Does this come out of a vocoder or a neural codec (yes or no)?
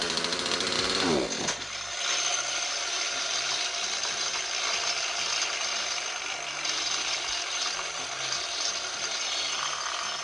no